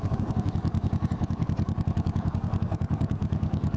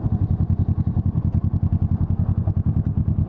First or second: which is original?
second